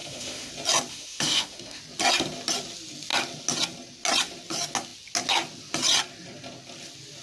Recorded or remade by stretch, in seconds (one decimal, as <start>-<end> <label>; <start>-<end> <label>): 0.0-0.5 remade; 0.5-0.9 recorded; 0.9-1.8 remade; 1.8-7.2 recorded